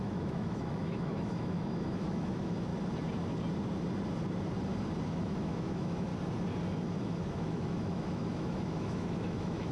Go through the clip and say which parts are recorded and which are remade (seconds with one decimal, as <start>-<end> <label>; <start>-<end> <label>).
0.0-2.7 remade; 2.7-5.1 recorded; 5.1-6.1 remade; 6.1-7.0 recorded; 7.0-9.7 remade